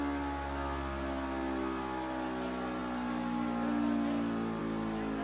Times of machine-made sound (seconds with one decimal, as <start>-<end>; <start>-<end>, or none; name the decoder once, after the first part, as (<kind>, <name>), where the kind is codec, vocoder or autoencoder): none